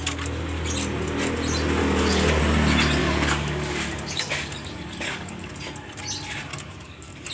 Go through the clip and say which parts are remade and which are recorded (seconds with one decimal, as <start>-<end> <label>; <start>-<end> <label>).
0.0-1.8 recorded; 1.8-2.4 remade; 2.4-3.0 recorded; 3.0-5.5 remade; 5.5-6.5 recorded; 6.5-7.3 remade